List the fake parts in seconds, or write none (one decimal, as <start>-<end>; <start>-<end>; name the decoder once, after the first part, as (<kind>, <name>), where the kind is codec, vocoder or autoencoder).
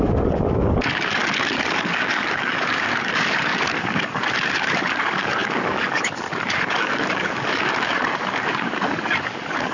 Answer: 0.0-9.7 (codec, DAC)